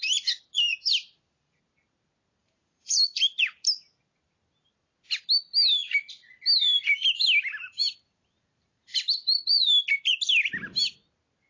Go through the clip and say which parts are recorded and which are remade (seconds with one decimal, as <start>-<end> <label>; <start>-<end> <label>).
0.0-0.7 recorded; 0.7-1.6 remade; 1.6-2.4 recorded; 2.4-3.4 remade; 3.4-7.6 recorded; 7.6-9.7 remade; 9.7-11.5 recorded